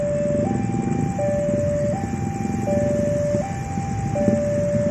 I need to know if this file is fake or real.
real